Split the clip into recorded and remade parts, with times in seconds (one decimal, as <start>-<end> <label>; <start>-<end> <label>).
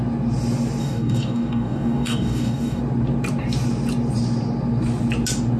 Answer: 0.0-0.8 recorded; 0.8-2.8 remade; 2.8-5.6 recorded